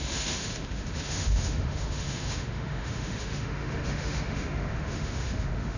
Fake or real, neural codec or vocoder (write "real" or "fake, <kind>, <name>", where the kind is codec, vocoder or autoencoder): fake, autoencoder, DAC-VAE